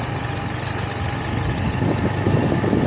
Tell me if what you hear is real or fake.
real